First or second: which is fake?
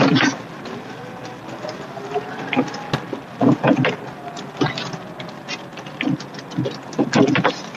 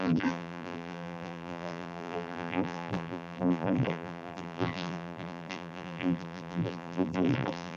second